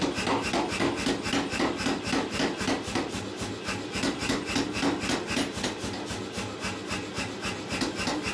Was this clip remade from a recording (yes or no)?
no